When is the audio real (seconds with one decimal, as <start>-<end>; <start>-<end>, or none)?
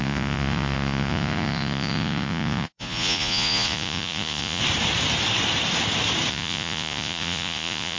4.6-6.3